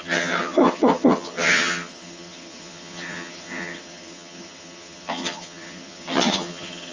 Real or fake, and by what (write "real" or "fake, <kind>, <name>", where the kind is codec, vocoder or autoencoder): fake, vocoder, HiFi-GAN